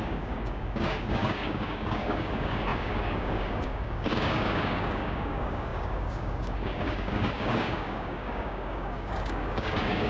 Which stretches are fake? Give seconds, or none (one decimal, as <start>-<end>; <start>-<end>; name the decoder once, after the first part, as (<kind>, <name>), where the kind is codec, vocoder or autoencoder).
0.0-10.1 (codec, DAC)